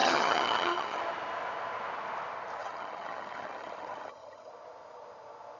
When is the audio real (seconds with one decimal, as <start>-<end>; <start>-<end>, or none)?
1.0-2.6; 4.5-5.6